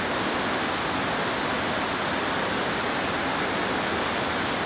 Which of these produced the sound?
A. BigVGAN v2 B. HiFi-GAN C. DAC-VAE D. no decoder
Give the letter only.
D